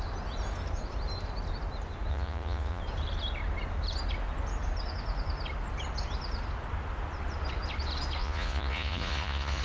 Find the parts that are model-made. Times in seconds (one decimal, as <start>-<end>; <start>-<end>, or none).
2.1-2.8; 8.2-9.6